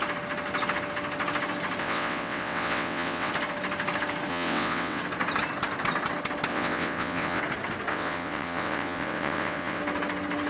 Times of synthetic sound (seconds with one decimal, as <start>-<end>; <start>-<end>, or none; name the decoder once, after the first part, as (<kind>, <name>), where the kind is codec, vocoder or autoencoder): 1.8-3.3 (vocoder, WaveNeXt); 4.3-5.0; 6.5-7.4; 7.9-9.8